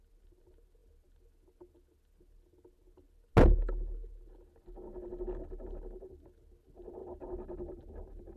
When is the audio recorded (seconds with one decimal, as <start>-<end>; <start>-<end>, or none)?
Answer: 0.0-8.4